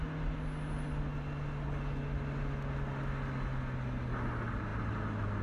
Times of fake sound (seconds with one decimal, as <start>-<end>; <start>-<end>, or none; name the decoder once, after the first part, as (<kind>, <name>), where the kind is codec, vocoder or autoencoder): none